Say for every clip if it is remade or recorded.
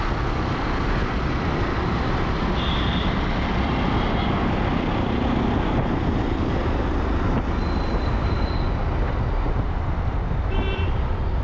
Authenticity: recorded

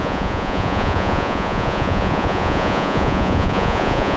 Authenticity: remade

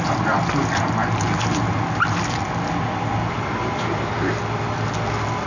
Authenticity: recorded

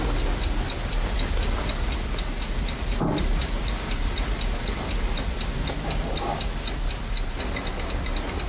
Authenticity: recorded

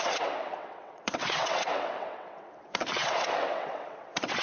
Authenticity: remade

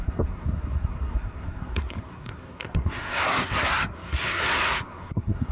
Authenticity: remade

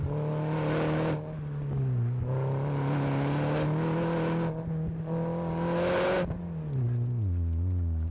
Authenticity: recorded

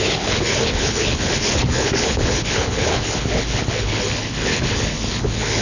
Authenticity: remade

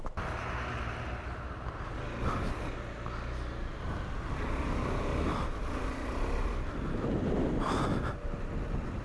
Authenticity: recorded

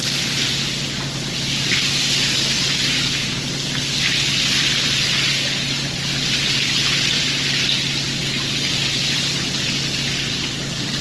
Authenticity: recorded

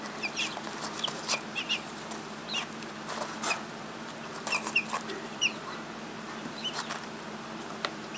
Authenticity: remade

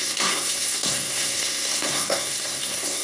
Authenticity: remade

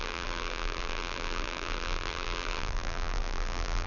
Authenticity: remade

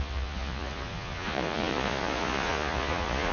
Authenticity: remade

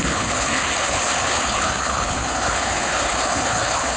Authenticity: remade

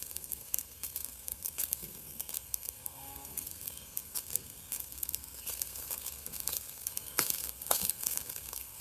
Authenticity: remade